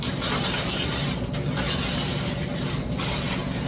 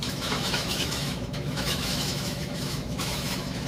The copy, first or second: second